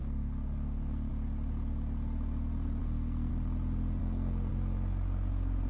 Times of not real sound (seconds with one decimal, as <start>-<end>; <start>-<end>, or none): 0.0-1.1; 2.8-3.3; 4.0-4.5